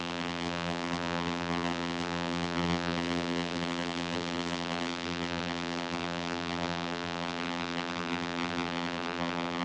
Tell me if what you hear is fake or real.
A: fake